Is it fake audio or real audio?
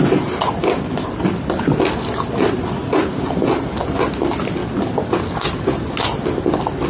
real